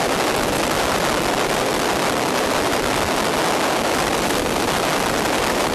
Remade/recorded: recorded